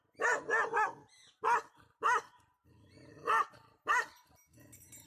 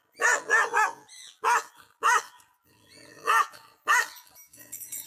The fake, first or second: second